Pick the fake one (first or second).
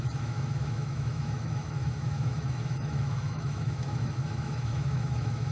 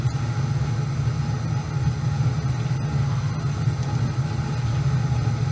first